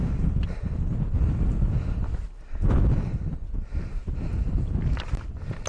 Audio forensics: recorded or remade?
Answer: recorded